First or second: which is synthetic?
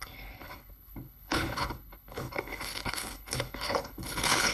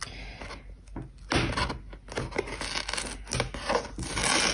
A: first